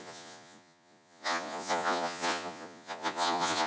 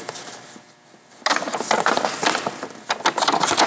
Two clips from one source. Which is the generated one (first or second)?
first